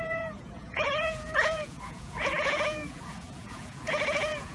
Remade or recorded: remade